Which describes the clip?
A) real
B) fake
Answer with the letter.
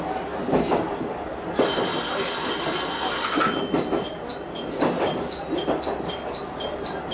A